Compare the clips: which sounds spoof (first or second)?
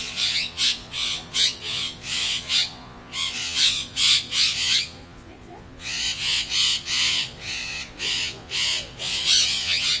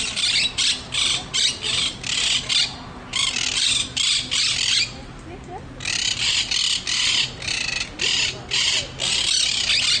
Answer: first